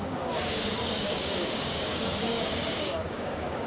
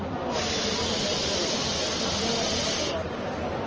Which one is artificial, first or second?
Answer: first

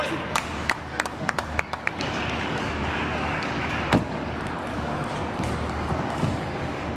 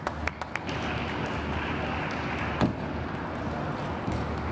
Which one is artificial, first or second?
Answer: first